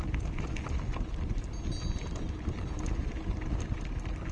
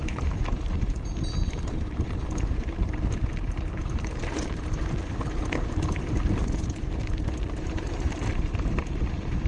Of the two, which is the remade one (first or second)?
second